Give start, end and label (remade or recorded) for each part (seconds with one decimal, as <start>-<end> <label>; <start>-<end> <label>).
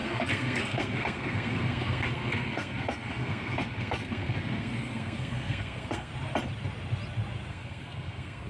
0.0-6.1 remade; 6.1-7.5 recorded; 7.5-8.5 remade